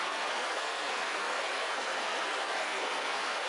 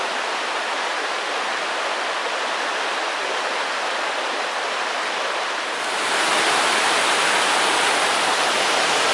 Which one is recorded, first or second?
second